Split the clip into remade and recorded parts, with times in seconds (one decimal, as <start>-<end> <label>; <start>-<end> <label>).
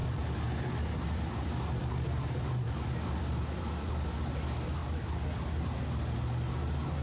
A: 0.0-3.9 remade; 3.9-7.0 recorded